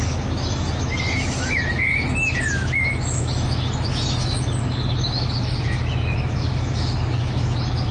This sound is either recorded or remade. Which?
remade